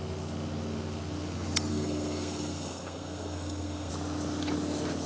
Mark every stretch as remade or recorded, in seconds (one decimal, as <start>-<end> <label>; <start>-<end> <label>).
0.0-1.7 recorded; 1.7-3.9 remade; 3.9-5.1 recorded